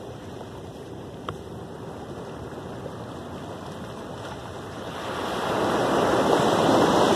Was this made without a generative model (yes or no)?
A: yes